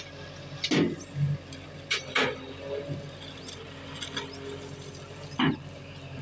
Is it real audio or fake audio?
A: real